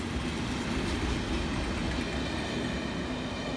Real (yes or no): yes